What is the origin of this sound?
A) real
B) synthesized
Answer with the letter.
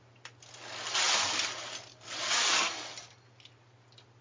A